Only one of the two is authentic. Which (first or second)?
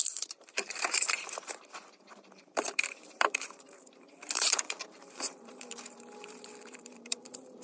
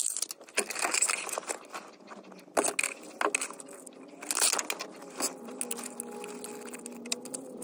second